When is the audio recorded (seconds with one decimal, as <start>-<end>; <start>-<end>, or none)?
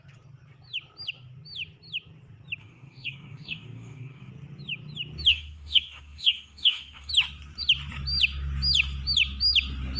0.0-2.6; 4.3-5.3; 7.1-10.0